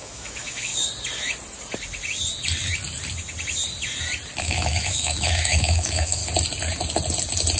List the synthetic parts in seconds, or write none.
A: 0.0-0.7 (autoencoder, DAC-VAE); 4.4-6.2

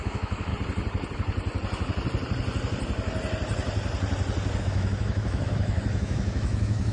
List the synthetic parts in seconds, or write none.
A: 0.0-0.5 (autoencoder, DAC-VAE); 4.6-6.9

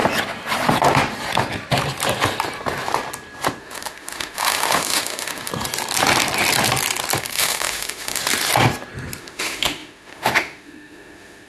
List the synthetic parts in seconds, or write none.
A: 3.6-5.5 (autoencoder, DAC-VAE); 7.2-8.2; 9.2-11.5

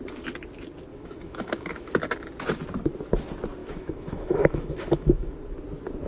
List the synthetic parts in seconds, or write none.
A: 0.9-1.9 (autoencoder, DAC-VAE); 3.6-5.3